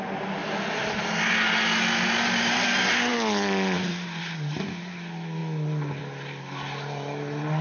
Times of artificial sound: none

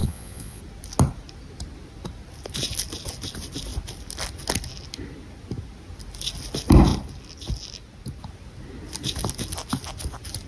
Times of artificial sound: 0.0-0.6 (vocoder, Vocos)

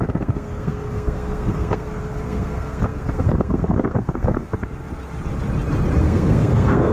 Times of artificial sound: 0.0-4.5 (codec, SNAC); 6.0-6.9